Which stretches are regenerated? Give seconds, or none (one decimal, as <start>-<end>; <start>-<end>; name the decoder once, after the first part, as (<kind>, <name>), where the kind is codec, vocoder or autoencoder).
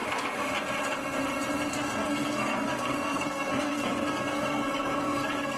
1.7-5.6 (codec, SNAC)